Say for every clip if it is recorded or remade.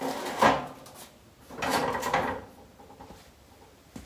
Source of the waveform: recorded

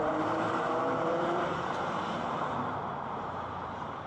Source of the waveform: remade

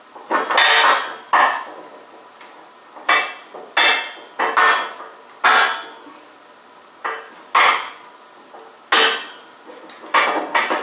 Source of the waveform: recorded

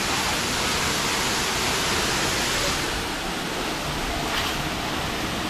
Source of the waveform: recorded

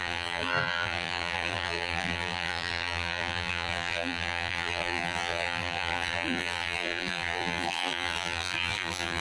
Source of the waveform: remade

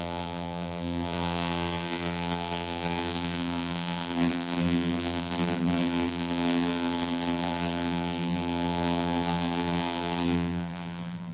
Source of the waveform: remade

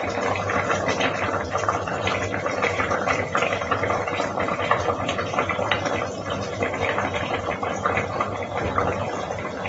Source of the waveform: remade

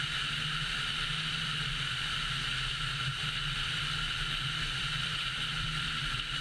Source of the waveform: remade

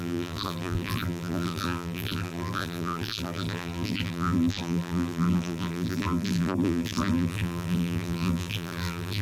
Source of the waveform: remade